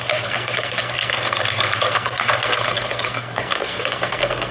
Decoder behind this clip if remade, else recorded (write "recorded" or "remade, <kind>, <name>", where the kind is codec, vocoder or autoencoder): remade, codec, SNAC